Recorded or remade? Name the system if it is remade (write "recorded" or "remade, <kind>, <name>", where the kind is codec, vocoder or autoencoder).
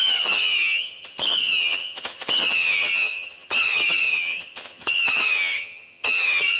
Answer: remade, vocoder, HiFi-GAN